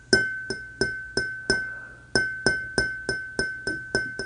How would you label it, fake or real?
real